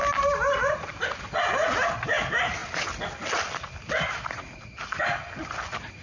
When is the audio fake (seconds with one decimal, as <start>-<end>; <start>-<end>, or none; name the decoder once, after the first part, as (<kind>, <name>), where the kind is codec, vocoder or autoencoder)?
none